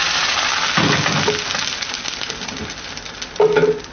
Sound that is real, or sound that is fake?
real